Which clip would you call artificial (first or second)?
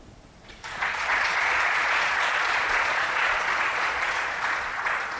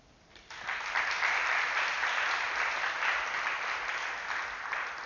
first